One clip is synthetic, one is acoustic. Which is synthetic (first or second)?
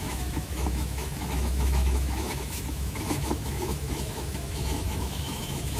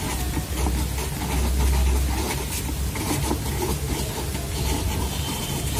first